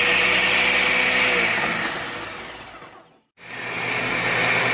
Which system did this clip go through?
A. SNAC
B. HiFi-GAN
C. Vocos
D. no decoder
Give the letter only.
D